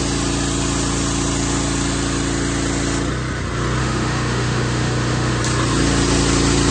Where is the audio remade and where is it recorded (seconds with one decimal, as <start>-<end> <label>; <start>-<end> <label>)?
0.0-3.8 recorded; 3.8-5.4 remade; 5.4-6.7 recorded